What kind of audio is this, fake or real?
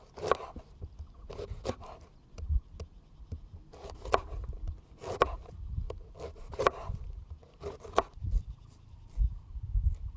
real